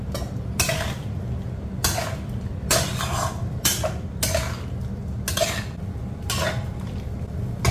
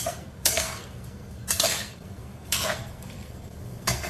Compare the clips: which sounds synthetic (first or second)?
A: second